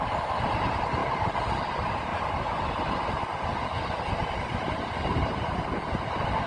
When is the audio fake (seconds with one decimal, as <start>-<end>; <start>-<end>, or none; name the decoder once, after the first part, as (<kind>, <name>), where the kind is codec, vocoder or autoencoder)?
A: none